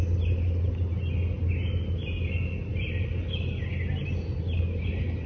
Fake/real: real